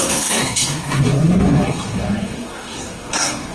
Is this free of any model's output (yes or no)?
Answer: no